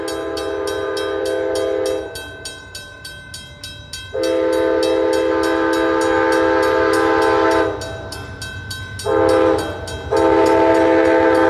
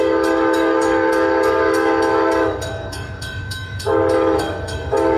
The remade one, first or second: second